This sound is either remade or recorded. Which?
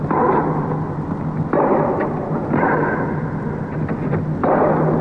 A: recorded